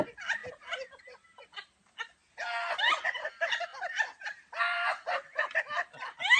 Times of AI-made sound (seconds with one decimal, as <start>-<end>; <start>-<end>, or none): 0.4-1.0; 3.7-5.4